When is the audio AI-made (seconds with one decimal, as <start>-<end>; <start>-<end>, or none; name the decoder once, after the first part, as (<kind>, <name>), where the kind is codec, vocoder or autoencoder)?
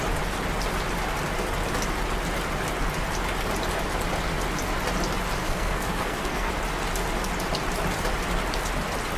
5.4-6.5 (codec, SNAC)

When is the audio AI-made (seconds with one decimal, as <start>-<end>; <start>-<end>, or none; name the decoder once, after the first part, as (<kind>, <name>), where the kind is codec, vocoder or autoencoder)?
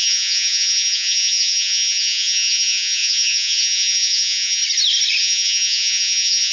0.0-4.6 (vocoder, Vocos); 5.2-6.5